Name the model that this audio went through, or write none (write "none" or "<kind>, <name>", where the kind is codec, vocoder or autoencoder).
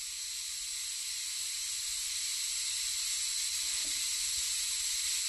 none